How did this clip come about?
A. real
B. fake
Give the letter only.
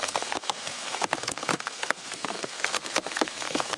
B